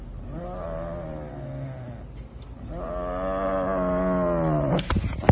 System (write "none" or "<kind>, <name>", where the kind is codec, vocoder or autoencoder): none